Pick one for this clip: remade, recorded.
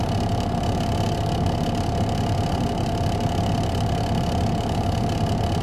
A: recorded